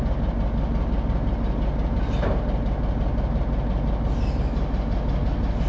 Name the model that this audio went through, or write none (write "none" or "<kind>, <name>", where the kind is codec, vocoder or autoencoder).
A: none